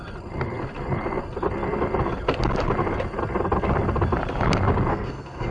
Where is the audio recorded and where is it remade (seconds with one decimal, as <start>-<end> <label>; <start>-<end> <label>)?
0.0-4.9 recorded; 4.9-5.5 remade